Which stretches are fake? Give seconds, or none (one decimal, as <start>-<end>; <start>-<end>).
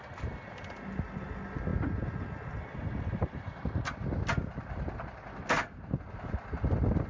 none